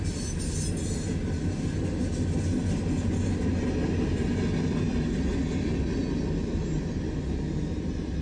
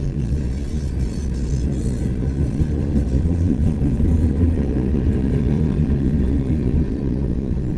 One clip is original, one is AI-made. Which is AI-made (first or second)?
second